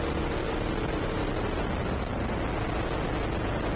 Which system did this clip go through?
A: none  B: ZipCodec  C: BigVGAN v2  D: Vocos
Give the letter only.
A